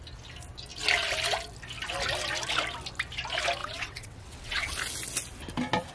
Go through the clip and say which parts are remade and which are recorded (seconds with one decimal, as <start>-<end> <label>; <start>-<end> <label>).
0.0-3.6 recorded; 3.6-4.7 remade; 4.7-5.9 recorded